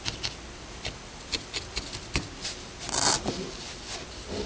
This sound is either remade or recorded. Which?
recorded